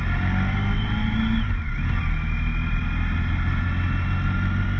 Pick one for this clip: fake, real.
real